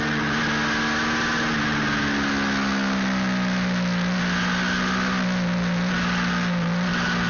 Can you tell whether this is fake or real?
real